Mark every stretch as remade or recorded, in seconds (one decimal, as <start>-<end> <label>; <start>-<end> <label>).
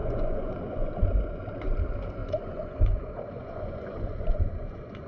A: 0.0-1.4 remade; 1.4-2.2 recorded; 2.2-5.1 remade